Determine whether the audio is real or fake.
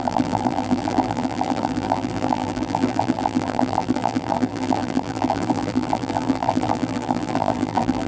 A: fake